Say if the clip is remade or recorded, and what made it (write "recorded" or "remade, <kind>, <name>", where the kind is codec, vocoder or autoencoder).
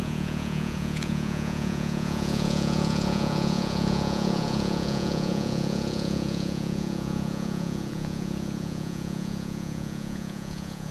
remade, vocoder, Vocos